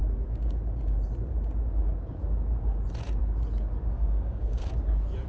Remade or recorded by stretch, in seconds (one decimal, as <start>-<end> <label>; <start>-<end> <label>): 0.0-3.9 recorded; 3.9-4.7 remade; 4.7-5.3 recorded